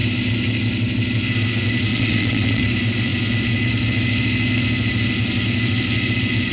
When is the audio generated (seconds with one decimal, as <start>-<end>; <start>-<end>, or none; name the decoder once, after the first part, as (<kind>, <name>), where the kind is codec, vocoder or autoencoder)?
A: 1.9-2.6 (vocoder, WaveNeXt)